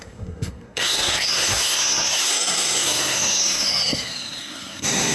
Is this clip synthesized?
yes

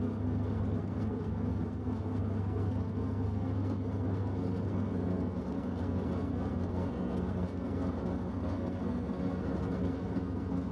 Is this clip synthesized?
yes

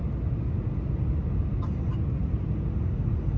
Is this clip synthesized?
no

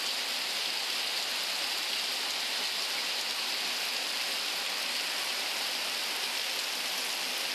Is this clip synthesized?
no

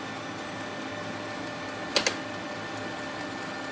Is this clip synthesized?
no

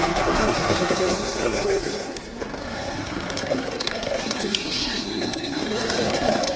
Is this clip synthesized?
yes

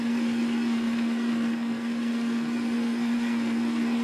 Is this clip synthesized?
yes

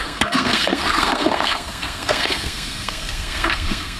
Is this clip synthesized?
yes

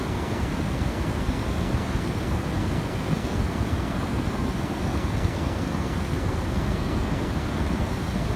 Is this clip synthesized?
yes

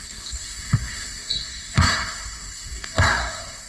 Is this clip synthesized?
yes